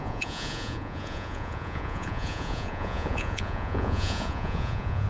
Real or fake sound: fake